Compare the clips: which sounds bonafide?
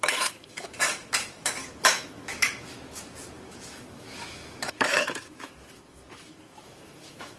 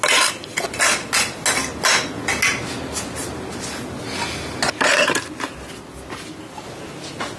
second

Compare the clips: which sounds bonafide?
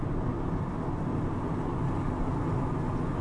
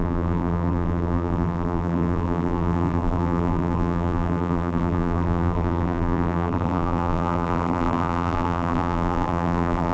first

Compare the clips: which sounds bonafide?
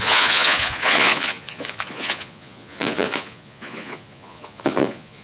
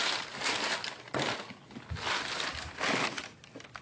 second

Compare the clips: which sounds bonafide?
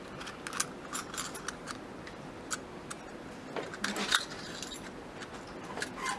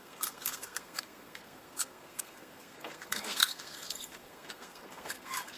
first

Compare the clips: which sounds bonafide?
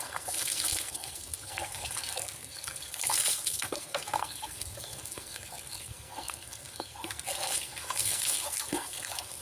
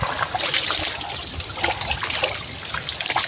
second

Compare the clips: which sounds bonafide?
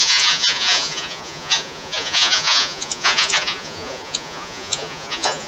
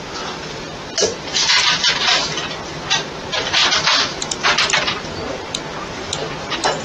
second